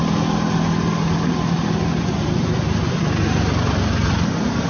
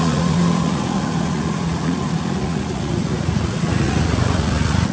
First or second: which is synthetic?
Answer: second